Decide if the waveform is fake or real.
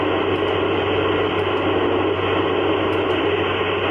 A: real